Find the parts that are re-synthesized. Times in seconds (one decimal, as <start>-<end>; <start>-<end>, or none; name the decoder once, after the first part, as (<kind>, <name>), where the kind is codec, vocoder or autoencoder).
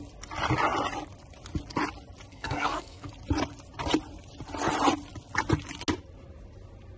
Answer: 2.3-3.1 (codec, SNAC)